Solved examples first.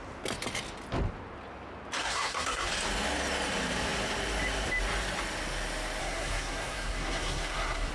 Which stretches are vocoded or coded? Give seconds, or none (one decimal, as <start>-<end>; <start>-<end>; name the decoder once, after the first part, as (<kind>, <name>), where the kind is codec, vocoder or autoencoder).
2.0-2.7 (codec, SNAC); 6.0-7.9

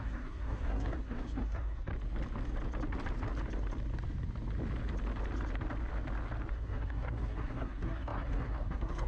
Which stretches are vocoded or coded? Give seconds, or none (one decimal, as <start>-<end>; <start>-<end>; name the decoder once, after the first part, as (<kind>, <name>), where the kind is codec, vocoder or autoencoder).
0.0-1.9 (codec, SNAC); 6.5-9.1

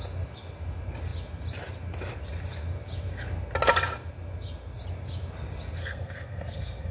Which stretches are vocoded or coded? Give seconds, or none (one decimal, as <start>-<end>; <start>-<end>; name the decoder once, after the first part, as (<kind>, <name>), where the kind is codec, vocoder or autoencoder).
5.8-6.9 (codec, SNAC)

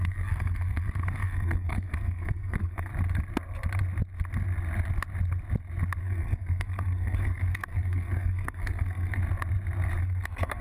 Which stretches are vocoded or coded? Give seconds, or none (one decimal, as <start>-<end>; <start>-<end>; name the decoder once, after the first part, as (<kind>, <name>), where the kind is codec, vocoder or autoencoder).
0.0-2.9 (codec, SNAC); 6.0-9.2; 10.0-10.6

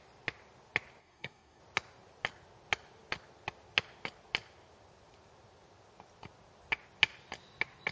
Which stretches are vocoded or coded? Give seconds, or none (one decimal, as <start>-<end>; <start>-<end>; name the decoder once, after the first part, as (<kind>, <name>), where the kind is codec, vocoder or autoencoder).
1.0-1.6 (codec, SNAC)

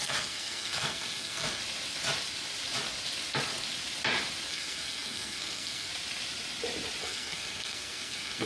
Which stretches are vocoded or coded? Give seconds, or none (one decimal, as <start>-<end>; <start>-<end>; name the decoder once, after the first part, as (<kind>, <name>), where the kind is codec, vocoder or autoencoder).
0.0-1.6 (codec, SNAC); 4.5-5.9; 7.0-8.5

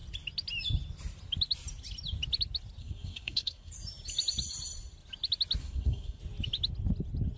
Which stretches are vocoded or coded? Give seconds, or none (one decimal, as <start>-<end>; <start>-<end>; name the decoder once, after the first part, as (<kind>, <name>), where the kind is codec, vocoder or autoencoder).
2.8-3.7 (codec, SNAC); 5.6-6.2

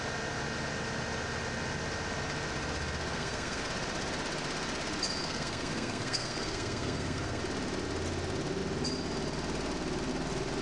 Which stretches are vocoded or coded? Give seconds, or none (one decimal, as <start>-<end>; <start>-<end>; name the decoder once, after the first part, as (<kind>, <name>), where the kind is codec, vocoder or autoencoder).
3.1-3.7 (codec, SNAC); 5.2-7.4